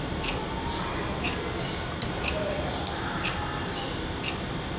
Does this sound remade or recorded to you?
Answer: recorded